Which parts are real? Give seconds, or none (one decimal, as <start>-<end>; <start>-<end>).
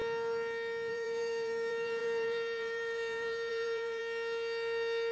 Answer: 0.0-0.9; 4.0-5.1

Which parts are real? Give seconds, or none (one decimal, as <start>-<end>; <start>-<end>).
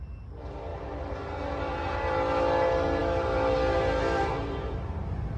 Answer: 0.0-5.4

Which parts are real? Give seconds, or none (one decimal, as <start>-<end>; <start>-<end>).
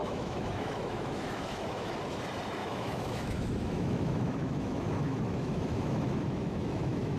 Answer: 1.9-2.6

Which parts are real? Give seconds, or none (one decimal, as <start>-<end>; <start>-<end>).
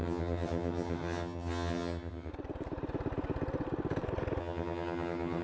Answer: 2.3-4.4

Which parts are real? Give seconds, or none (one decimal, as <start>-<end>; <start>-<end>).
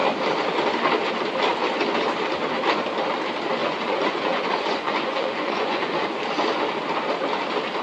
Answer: 0.0-3.6; 6.2-7.8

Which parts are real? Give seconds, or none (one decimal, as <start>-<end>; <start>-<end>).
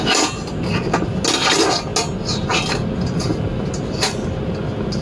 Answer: 0.0-5.0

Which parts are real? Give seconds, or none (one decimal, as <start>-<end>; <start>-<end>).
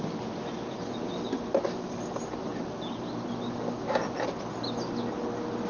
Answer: 0.0-5.7